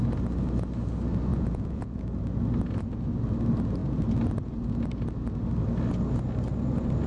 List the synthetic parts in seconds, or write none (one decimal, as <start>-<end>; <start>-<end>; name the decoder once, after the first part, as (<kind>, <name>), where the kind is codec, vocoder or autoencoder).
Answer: 1.3-2.0 (vocoder, Vocos)